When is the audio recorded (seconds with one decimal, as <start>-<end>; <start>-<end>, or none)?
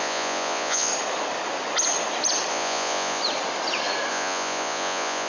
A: 0.9-2.5; 3.2-4.1